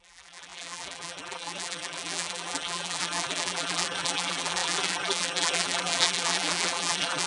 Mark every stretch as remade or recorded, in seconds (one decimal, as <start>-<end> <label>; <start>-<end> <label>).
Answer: 0.0-7.3 remade